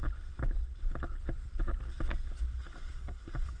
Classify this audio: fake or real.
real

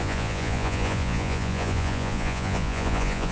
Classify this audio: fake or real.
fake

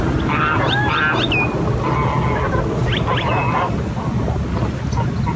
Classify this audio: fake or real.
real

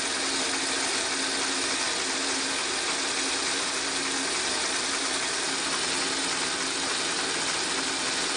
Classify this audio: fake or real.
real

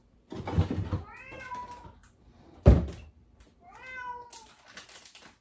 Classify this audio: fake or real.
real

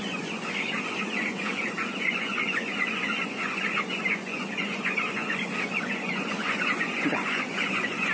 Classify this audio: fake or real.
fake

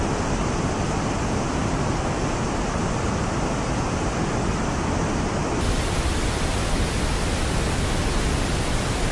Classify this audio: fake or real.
real